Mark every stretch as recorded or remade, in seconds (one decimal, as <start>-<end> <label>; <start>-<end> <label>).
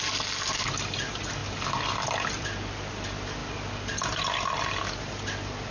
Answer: 0.0-5.7 recorded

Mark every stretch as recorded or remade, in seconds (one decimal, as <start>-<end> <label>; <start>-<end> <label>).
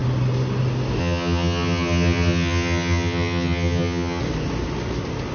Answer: 0.0-1.0 recorded; 1.0-4.2 remade; 4.2-5.3 recorded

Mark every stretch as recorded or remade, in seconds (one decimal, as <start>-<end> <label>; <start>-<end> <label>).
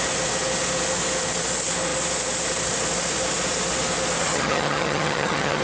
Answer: 0.0-4.2 recorded; 4.2-5.6 remade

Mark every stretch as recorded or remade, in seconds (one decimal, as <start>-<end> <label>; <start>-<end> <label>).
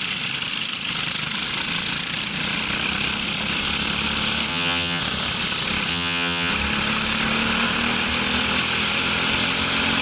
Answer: 0.0-4.5 recorded; 4.5-5.0 remade; 5.0-5.9 recorded; 5.9-6.5 remade; 6.5-10.0 recorded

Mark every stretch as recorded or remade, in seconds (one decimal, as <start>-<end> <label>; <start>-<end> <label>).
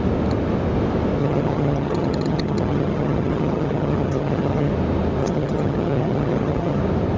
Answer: 0.0-1.2 recorded; 1.2-4.7 remade; 4.7-5.2 recorded; 5.2-6.8 remade; 6.8-7.2 recorded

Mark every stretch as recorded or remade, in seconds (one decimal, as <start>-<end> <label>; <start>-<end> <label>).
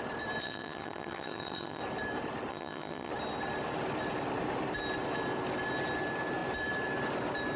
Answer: 0.0-0.4 recorded; 0.4-1.8 remade; 1.8-2.5 recorded; 2.5-3.1 remade; 3.1-7.6 recorded